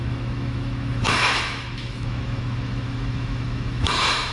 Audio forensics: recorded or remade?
remade